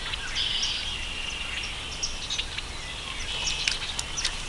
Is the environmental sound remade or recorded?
recorded